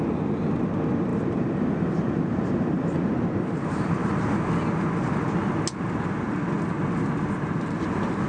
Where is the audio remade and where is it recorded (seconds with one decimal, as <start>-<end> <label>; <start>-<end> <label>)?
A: 0.0-1.1 recorded; 1.1-4.2 remade; 4.2-8.3 recorded